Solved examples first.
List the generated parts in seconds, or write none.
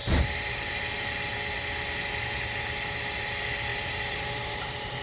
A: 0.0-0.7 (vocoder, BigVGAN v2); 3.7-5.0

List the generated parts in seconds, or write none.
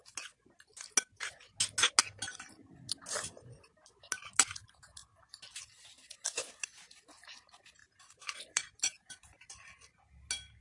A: 5.0-5.8 (vocoder, BigVGAN v2); 7.8-9.7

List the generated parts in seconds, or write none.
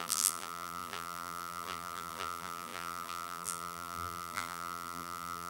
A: 0.0-5.5 (vocoder, BigVGAN v2)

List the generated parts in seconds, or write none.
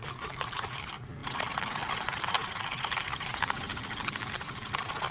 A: none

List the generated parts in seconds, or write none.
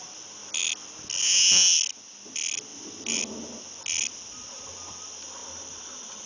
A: 2.7-3.2 (vocoder, BigVGAN v2)